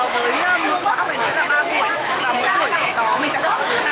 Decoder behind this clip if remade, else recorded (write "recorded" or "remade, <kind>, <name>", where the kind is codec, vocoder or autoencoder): remade, autoencoder, DAC-VAE